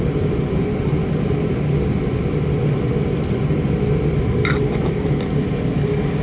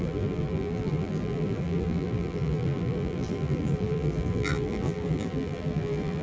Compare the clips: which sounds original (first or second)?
first